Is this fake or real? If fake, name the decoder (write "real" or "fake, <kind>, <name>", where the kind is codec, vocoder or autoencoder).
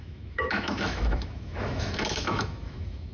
fake, autoencoder, DAC-VAE